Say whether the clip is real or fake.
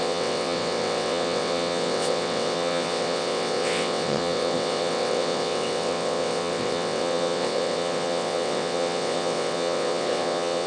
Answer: fake